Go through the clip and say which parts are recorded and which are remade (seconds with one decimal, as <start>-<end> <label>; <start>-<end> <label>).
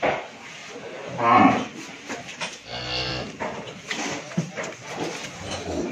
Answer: 0.0-5.9 recorded